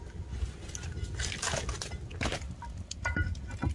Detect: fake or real real